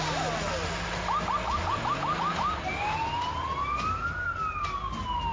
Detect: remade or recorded recorded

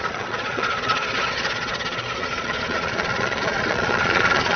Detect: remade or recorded remade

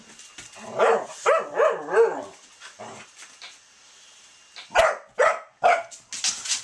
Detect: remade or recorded recorded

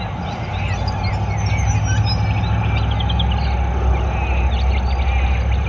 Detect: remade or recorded recorded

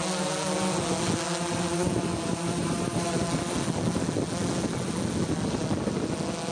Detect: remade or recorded recorded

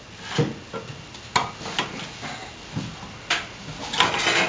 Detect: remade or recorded recorded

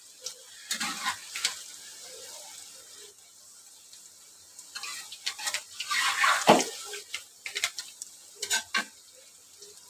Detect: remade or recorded recorded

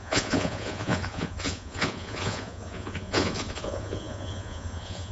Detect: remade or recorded remade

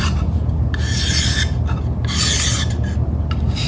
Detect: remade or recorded recorded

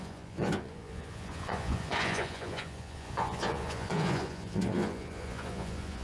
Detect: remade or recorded remade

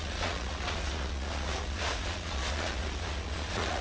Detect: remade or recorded remade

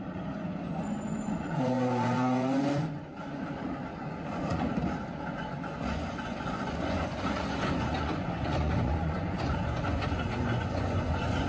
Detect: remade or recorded remade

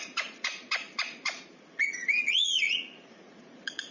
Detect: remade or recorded remade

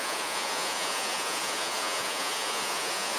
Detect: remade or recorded remade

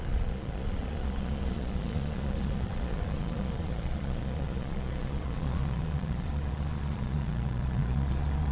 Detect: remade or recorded remade